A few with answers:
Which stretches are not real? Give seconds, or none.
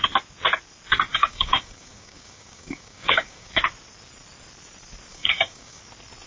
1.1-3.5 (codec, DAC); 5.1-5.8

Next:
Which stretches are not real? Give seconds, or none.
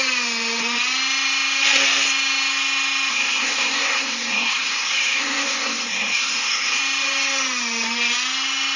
3.1-6.8 (codec, SNAC)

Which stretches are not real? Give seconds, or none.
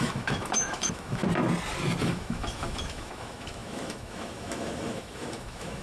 0.0-1.2 (autoencoder, DAC-VAE); 2.0-5.8